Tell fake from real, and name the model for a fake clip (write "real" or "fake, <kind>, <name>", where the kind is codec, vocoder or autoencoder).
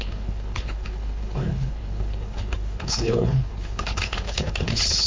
fake, codec, HILCodec